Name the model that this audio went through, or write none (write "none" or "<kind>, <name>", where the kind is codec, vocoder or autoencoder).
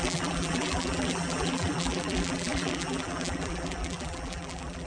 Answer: vocoder, BigVGAN v2